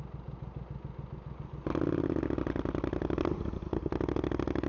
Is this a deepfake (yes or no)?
no